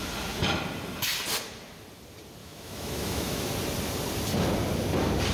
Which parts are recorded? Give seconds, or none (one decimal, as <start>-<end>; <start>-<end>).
0.0-2.4; 3.5-5.3